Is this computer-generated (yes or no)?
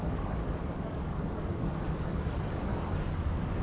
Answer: yes